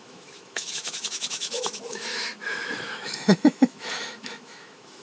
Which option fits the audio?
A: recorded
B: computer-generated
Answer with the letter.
B